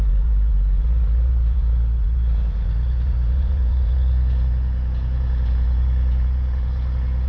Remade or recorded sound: remade